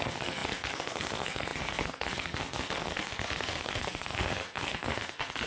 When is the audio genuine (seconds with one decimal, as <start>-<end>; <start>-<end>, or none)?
none